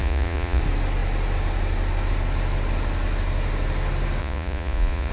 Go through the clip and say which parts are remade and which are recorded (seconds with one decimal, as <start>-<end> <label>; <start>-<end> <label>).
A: 0.0-0.6 remade; 0.6-4.2 recorded; 4.2-5.1 remade